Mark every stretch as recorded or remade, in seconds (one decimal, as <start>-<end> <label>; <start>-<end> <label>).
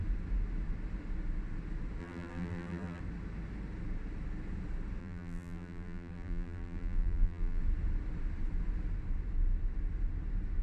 0.0-2.0 recorded; 2.0-3.0 remade; 3.0-5.0 recorded; 5.0-7.6 remade; 7.6-10.6 recorded